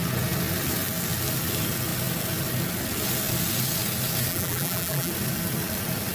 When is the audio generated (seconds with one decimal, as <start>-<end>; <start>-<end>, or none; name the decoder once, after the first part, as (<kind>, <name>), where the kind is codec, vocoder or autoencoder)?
4.3-5.1 (vocoder, BigVGAN v2)